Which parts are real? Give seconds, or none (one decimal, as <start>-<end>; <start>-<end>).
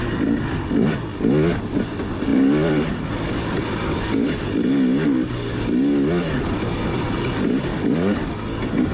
0.0-7.7; 8.2-8.9